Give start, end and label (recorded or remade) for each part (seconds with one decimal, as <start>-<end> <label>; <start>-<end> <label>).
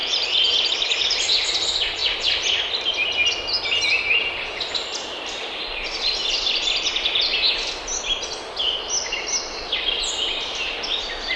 0.0-11.4 recorded